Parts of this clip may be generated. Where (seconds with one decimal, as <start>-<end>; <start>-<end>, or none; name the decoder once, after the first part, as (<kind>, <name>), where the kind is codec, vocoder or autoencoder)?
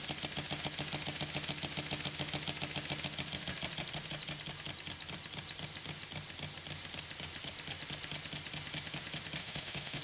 9.4-10.0 (autoencoder, DAC-VAE)